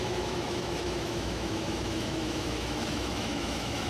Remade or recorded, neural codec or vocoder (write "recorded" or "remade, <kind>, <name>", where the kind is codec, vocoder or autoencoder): remade, autoencoder, DAC-VAE